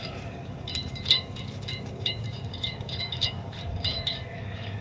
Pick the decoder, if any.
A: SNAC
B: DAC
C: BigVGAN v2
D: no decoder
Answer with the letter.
B